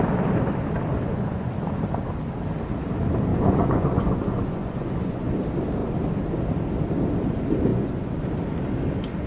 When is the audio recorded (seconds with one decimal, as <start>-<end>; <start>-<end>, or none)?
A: 0.0-0.9; 1.5-3.3; 5.3-7.7; 8.2-9.3